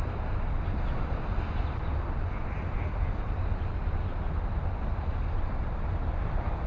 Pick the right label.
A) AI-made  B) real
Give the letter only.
B